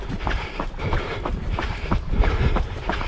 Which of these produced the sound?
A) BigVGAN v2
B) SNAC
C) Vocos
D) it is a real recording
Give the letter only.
A